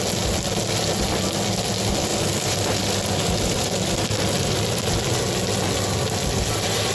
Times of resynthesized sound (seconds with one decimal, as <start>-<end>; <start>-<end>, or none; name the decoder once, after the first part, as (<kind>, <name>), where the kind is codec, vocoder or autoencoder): 2.1-5.2 (vocoder, BigVGAN v2)